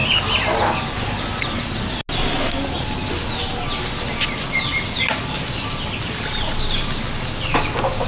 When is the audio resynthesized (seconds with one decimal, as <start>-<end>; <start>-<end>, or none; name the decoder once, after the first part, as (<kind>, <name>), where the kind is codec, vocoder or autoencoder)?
none